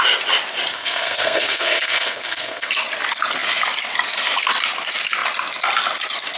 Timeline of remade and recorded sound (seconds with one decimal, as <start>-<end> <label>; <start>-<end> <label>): 0.0-0.7 recorded; 0.7-2.7 remade; 2.7-6.4 recorded